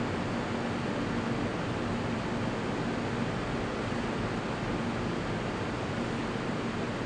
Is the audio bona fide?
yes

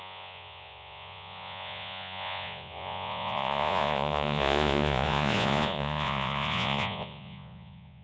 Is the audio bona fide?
no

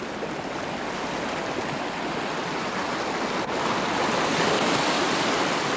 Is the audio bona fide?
yes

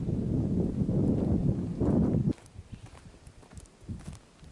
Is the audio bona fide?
yes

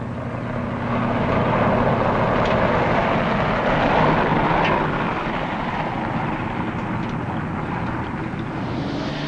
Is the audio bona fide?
yes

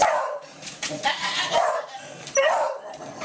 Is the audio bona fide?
no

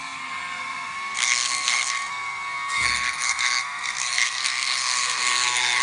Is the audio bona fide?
no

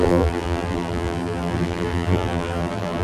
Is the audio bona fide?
no